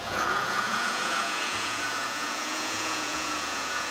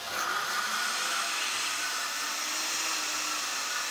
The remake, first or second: first